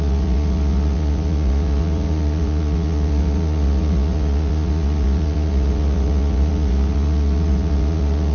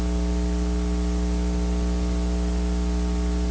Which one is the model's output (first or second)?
first